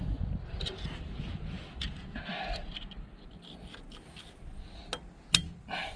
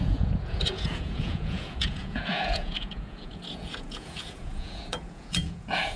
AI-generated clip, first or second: second